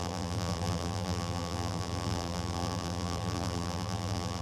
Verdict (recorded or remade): remade